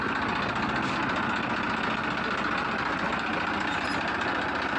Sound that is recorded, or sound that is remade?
recorded